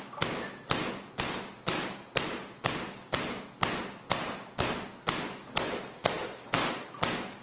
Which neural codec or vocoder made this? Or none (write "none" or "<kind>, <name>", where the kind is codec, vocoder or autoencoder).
none